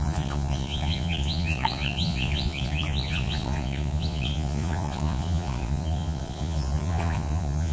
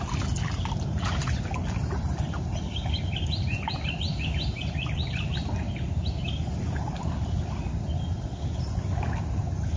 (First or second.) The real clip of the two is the second